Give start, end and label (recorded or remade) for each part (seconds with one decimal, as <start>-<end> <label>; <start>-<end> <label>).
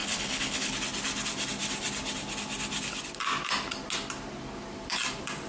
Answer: 0.0-0.7 remade; 0.7-5.5 recorded